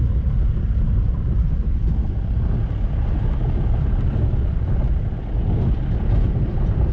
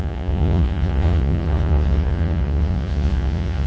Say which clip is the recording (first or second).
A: first